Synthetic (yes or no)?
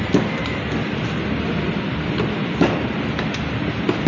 no